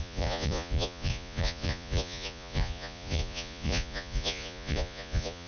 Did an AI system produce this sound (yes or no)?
yes